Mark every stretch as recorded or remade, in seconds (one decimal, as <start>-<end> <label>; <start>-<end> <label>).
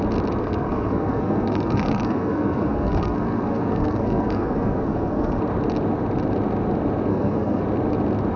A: 0.0-0.4 recorded; 0.4-5.4 remade; 5.4-7.1 recorded; 7.1-7.6 remade; 7.6-8.4 recorded